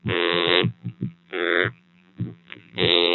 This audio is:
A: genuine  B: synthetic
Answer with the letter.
B